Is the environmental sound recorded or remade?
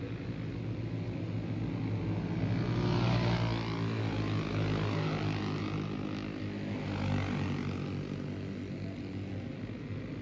recorded